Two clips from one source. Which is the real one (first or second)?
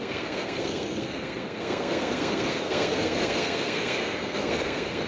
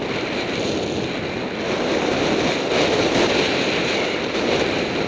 second